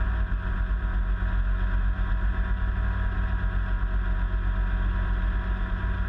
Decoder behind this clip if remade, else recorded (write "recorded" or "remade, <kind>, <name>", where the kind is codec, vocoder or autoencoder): recorded